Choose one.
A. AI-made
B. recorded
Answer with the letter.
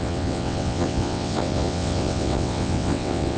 A